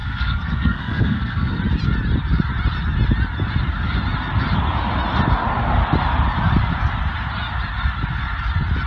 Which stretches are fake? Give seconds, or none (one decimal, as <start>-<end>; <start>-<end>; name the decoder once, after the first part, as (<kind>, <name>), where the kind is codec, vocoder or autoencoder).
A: 0.0-1.6 (codec, SNAC)